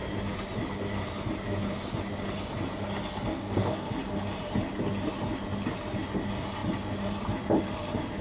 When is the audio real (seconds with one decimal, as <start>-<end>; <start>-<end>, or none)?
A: 0.0-3.3; 3.9-8.2